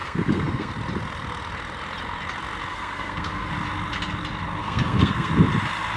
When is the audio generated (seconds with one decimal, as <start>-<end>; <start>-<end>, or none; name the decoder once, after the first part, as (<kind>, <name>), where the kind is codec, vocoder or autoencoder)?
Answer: 0.0-0.7 (codec, SNAC); 2.7-3.5; 4.6-5.3